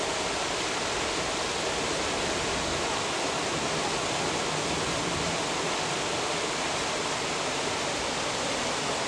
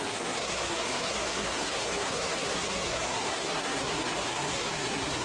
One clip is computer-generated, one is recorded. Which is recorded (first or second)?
first